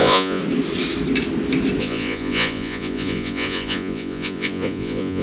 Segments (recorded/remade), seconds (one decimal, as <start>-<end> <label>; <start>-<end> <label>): 0.0-0.4 remade; 0.4-1.8 recorded; 1.8-5.2 remade